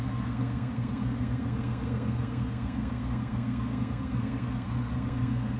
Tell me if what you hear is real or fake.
fake